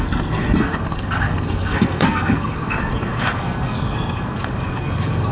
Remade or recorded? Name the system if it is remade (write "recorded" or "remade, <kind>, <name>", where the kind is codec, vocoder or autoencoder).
remade, codec, SNAC